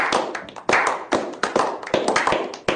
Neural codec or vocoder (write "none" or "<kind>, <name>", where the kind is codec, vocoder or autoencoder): none